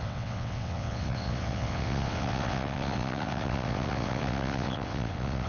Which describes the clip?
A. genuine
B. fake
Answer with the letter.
B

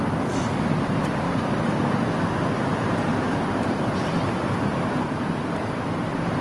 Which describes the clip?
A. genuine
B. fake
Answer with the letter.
B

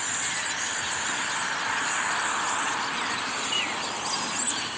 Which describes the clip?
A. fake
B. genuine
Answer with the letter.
B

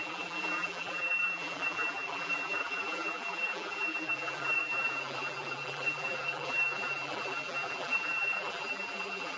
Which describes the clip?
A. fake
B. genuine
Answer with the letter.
A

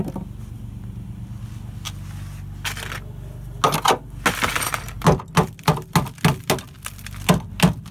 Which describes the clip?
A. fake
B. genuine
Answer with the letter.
B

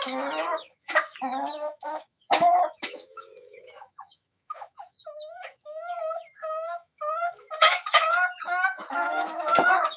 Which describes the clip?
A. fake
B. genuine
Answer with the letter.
A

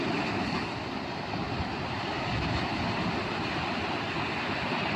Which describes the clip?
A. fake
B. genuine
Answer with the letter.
B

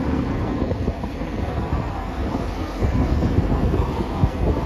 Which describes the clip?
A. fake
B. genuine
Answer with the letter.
A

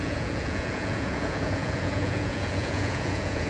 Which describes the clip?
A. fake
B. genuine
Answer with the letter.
A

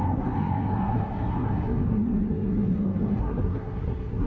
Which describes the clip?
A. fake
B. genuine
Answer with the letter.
A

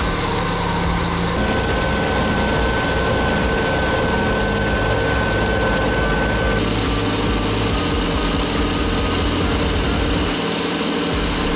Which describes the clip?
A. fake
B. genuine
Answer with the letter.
B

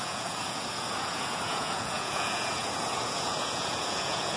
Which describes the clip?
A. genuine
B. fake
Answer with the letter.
B